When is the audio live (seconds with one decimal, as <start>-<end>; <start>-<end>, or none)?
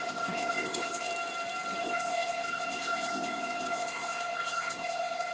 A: 1.1-1.8